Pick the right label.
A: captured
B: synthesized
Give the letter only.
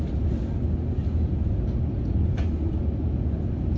A